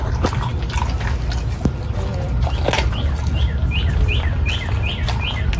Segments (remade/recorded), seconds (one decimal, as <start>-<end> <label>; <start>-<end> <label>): 0.0-5.6 recorded